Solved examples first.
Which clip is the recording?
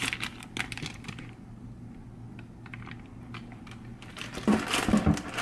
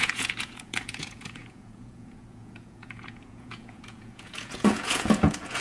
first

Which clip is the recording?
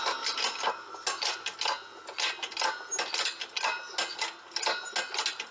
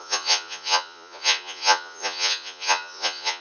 first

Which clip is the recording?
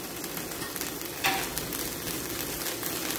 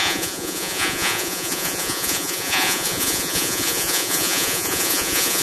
first